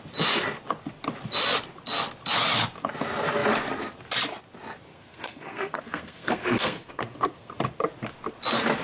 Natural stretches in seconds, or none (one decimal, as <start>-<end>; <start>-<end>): 0.0-4.9; 7.6-8.8